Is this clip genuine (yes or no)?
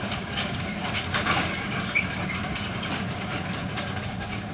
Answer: no